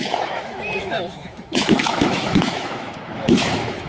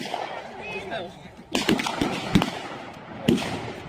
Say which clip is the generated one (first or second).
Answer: first